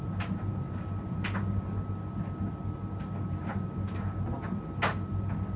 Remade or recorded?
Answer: recorded